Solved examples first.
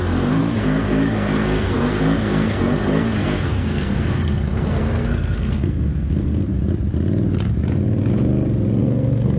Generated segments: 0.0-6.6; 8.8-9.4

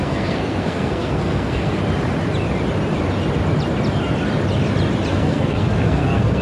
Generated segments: 0.0-1.8; 5.1-6.4

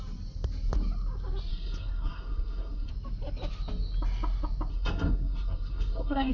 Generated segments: 1.5-2.9; 4.7-6.3

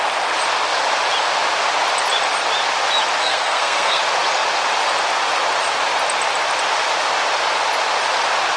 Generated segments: 3.2-4.0

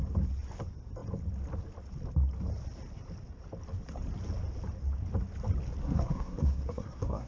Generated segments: 5.8-7.3

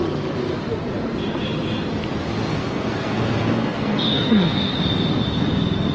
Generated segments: 2.5-4.7

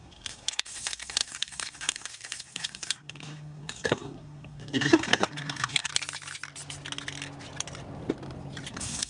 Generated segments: 0.0-5.9; 8.7-9.1